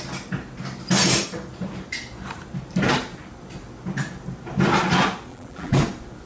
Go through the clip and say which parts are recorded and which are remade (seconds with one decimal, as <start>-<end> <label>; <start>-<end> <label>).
0.0-5.3 recorded; 5.3-5.8 remade; 5.8-6.3 recorded